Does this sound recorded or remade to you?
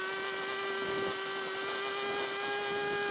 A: recorded